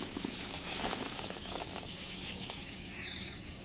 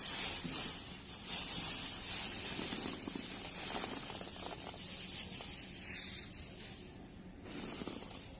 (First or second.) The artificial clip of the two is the first